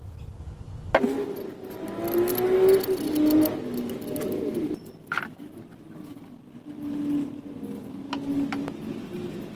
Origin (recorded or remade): recorded